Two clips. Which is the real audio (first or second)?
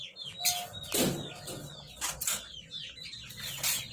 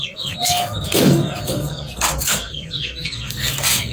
first